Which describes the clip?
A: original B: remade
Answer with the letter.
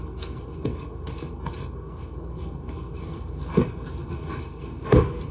B